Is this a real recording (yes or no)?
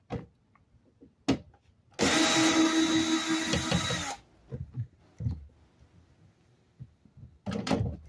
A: yes